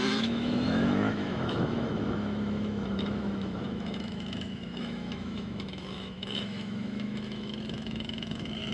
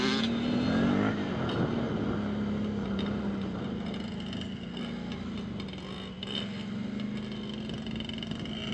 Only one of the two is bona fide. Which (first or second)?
second